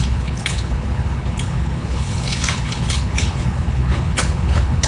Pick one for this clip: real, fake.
fake